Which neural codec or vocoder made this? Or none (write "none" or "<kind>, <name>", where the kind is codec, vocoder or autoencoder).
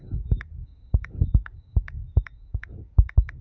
codec, DAC